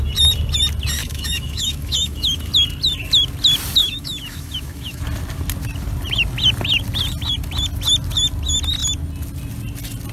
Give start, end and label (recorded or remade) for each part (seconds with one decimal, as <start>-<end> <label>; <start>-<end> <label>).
0.0-1.0 recorded; 1.0-2.5 remade; 2.5-3.8 recorded; 3.8-5.0 remade; 5.0-10.1 recorded